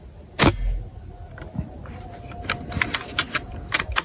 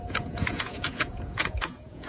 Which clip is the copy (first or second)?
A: second